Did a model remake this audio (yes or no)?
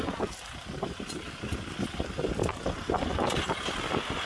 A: no